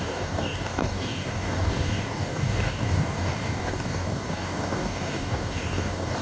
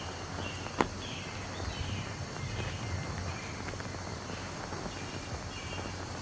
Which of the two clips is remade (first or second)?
first